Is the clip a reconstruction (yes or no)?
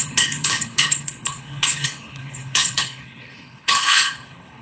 yes